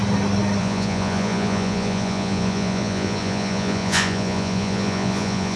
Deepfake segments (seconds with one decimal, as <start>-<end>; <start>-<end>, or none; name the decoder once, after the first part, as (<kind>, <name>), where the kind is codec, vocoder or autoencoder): 0.6-5.6 (vocoder, Vocos)